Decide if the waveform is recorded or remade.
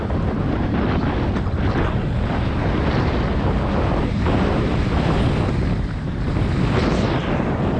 recorded